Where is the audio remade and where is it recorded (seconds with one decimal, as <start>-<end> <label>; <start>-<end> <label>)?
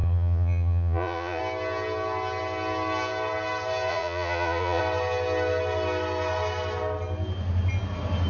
0.0-1.4 remade; 1.4-3.9 recorded; 3.9-4.8 remade; 4.8-8.3 recorded